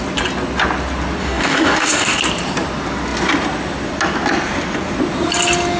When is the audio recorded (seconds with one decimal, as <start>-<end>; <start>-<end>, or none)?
0.0-1.2; 2.2-5.8

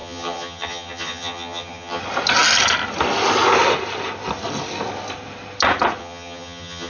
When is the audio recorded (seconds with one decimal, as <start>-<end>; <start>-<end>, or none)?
2.0-6.0

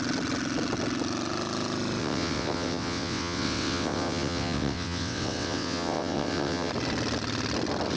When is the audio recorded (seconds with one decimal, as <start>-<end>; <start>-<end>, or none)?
0.0-2.0; 6.7-8.0

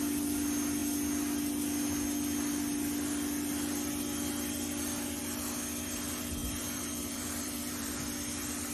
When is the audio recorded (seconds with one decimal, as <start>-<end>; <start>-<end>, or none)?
0.0-6.4; 7.9-8.7

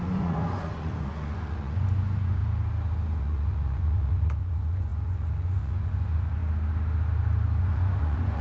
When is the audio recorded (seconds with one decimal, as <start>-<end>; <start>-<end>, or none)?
2.4-3.2; 6.4-7.6

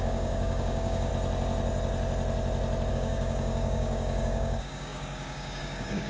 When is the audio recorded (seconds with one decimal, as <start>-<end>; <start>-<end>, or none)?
1.1-2.9

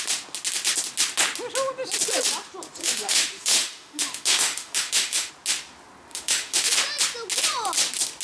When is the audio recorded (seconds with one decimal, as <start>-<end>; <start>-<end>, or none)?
0.0-2.8; 5.3-6.1; 6.7-8.2

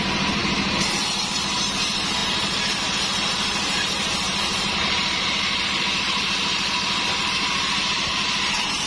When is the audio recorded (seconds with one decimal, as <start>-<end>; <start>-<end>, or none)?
none